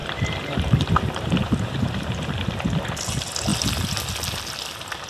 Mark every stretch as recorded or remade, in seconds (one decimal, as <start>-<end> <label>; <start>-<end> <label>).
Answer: 0.0-2.3 remade; 2.3-5.1 recorded